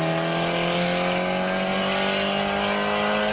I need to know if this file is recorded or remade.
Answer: recorded